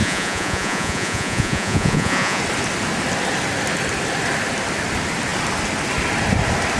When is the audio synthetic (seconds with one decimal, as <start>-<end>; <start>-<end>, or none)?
0.0-2.4